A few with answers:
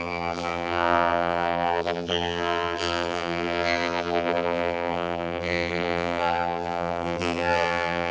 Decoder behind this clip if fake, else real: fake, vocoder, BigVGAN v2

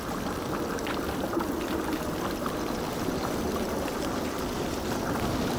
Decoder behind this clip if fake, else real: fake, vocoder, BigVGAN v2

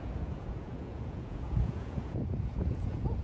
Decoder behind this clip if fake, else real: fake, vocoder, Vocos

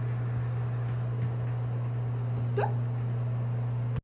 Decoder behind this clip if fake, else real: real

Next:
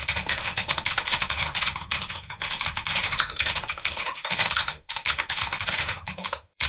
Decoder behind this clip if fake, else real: fake, autoencoder, DAC-VAE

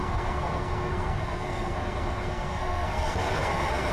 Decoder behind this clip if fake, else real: fake, codec, SNAC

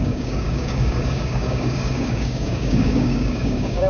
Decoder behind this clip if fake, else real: fake, codec, DAC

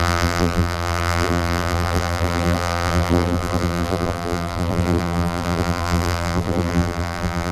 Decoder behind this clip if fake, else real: fake, vocoder, BigVGAN v2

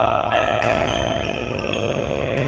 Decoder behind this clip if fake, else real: fake, vocoder, HiFi-GAN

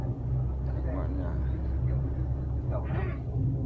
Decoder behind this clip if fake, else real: real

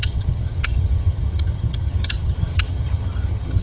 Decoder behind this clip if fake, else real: fake, vocoder, HiFi-GAN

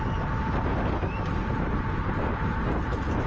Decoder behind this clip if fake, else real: real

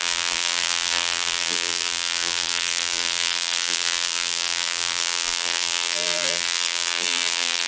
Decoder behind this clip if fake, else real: fake, vocoder, BigVGAN v2